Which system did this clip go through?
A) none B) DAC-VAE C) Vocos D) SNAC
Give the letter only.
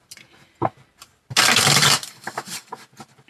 A